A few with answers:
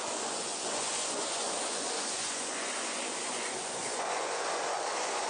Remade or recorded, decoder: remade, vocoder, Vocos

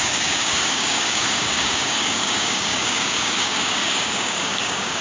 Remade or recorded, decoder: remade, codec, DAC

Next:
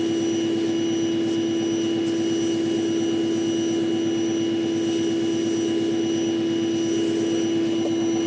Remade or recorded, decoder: recorded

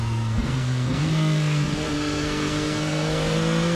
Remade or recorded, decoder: remade, codec, SNAC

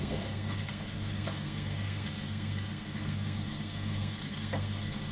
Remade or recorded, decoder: remade, codec, SNAC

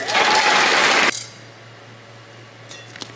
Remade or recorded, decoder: recorded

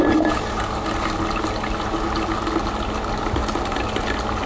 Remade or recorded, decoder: recorded